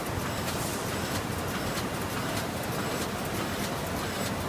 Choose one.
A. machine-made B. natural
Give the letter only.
B